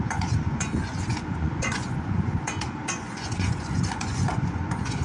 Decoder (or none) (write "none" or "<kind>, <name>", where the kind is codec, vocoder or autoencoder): vocoder, Vocos